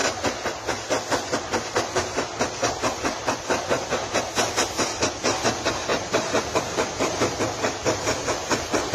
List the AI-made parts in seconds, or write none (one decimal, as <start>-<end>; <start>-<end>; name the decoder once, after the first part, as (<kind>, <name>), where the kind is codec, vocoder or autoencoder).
5.9-7.3 (vocoder, BigVGAN v2)